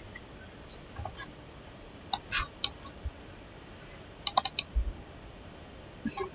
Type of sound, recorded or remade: recorded